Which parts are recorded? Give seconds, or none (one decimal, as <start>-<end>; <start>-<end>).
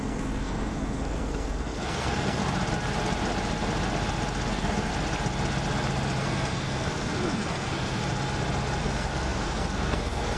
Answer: 2.4-4.5; 4.9-6.2; 8.0-8.8